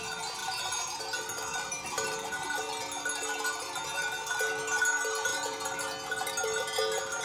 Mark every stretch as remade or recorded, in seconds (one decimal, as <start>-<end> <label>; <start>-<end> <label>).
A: 0.0-0.4 recorded; 0.4-1.0 remade; 1.0-1.5 recorded; 1.5-2.6 remade; 2.6-7.2 recorded